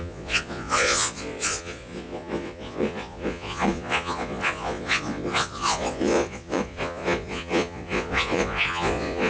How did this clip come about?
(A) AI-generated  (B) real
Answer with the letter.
A